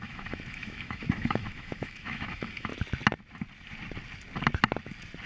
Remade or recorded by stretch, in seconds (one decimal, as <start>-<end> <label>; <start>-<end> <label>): 0.0-2.7 remade; 2.7-5.3 recorded